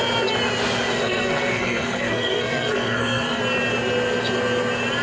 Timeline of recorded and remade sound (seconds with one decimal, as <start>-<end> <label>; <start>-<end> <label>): 0.0-0.9 recorded; 0.9-3.4 remade; 3.4-5.0 recorded